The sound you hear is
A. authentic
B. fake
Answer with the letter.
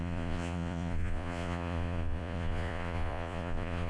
B